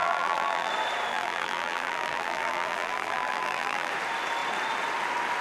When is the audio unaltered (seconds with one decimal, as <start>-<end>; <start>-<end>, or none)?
0.7-1.1; 3.9-5.4